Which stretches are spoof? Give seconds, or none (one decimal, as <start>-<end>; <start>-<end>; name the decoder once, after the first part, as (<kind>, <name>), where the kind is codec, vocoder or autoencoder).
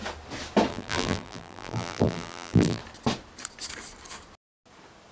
0.7-2.8 (vocoder, BigVGAN v2)